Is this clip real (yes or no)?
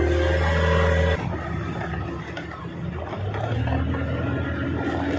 yes